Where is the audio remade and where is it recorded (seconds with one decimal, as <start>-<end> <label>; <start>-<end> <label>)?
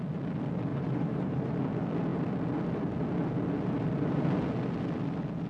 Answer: 0.0-0.7 recorded; 0.7-1.6 remade; 1.6-5.5 recorded